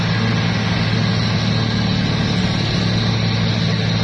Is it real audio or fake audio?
real